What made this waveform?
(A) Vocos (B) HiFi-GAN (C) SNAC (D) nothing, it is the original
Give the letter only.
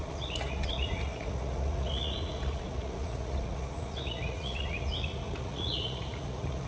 A